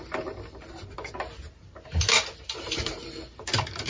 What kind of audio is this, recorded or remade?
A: recorded